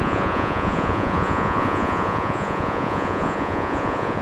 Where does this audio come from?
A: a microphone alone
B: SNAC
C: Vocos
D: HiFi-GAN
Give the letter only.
C